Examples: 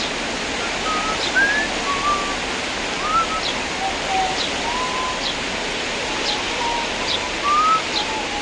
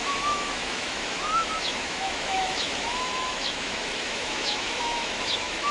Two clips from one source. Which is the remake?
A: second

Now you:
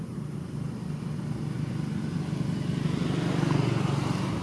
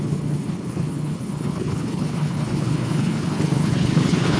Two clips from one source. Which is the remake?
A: second